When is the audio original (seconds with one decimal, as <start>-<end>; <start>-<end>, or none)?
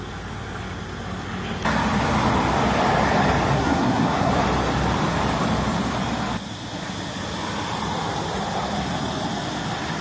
0.0-3.5; 4.3-10.0